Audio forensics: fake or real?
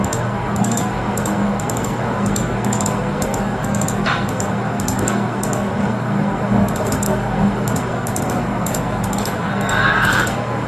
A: fake